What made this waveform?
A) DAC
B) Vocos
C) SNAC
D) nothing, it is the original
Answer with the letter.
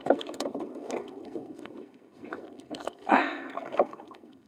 C